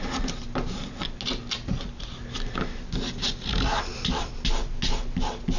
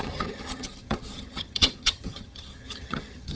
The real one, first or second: first